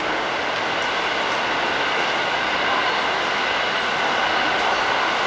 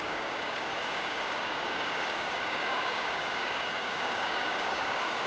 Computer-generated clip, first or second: second